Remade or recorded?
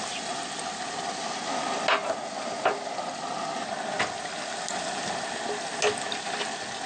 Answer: recorded